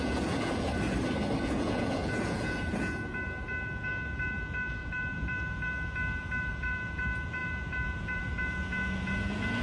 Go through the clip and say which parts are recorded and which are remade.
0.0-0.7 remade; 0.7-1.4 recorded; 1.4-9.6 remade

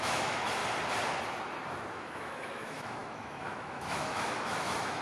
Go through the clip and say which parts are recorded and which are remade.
0.0-0.6 remade; 0.6-1.9 recorded; 1.9-5.0 remade

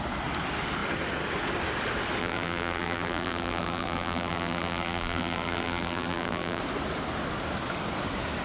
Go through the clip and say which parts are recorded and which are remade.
0.0-2.2 recorded; 2.2-6.6 remade; 6.6-8.4 recorded

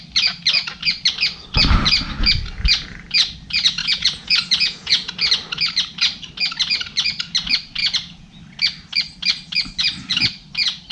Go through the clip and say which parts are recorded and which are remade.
0.0-3.8 recorded; 3.8-5.1 remade; 5.1-7.8 recorded; 7.8-8.4 remade; 8.4-10.9 recorded